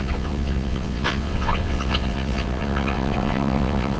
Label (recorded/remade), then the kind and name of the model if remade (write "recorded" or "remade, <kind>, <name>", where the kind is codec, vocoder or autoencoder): remade, vocoder, WaveNeXt